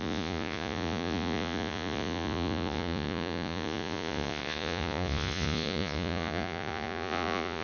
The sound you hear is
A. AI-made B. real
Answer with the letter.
A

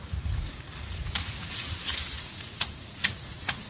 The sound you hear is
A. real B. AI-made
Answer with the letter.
B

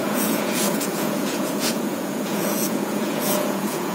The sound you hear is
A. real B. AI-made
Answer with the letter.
B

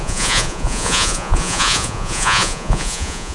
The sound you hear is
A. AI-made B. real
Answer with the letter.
A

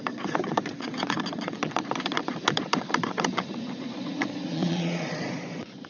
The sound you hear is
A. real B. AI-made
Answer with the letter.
B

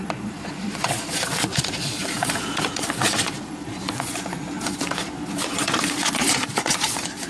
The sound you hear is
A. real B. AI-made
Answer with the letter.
B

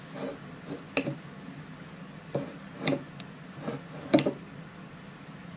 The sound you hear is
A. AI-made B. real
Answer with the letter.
B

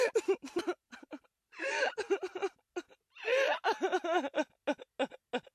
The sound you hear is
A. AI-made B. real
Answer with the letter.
B